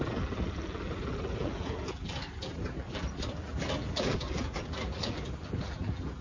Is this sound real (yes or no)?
no